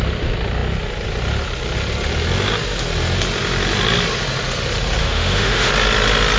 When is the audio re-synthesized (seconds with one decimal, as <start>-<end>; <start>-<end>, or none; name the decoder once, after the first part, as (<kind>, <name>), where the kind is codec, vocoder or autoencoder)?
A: 5.0-5.7 (autoencoder, DAC-VAE)